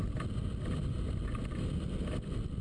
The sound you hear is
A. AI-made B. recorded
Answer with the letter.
B